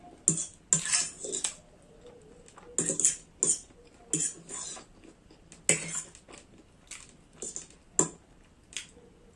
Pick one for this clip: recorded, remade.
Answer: recorded